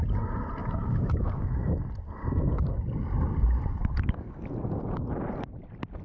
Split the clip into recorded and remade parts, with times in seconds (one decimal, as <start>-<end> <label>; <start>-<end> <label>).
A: 0.0-0.6 recorded; 0.6-1.8 remade; 1.8-6.0 recorded